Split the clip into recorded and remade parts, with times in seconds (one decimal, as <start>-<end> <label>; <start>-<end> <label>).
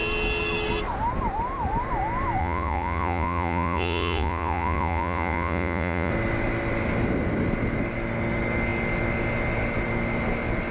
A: 0.0-2.4 recorded; 2.4-6.1 remade; 6.1-10.7 recorded